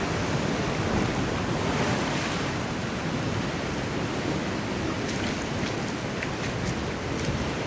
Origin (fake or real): real